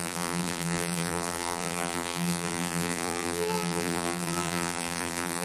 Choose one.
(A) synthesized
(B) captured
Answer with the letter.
A